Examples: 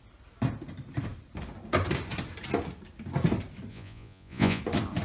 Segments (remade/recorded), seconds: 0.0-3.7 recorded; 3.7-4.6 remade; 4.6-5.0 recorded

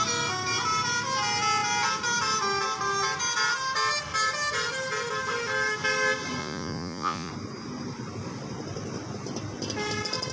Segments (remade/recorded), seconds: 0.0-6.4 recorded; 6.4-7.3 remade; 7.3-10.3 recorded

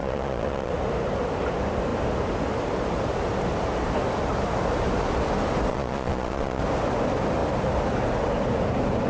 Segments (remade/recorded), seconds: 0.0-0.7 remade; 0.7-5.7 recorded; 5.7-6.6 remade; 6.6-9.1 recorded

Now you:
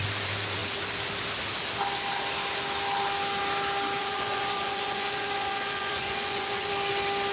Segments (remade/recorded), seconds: 0.0-4.0 recorded; 4.0-6.7 remade; 6.7-7.3 recorded

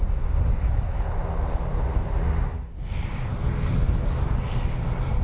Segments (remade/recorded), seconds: 0.0-5.2 recorded

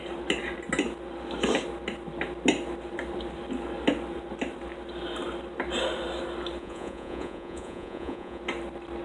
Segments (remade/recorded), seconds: 0.0-6.6 recorded; 6.6-8.4 remade; 8.4-9.0 recorded

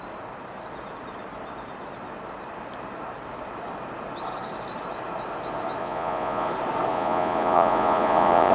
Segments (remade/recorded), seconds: 0.0-5.8 recorded; 5.8-6.5 remade; 6.5-6.9 recorded; 6.9-8.5 remade